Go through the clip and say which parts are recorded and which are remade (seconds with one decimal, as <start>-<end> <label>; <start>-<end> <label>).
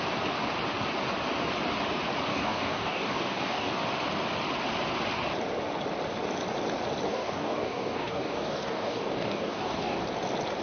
0.0-2.3 recorded; 2.3-3.7 remade; 3.7-7.1 recorded; 7.1-10.0 remade; 10.0-10.6 recorded